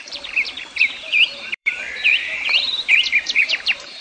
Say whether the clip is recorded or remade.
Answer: remade